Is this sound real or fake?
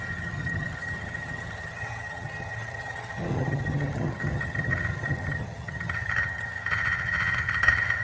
fake